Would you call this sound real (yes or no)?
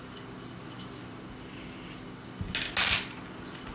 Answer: yes